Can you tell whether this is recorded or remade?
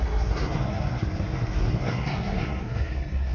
remade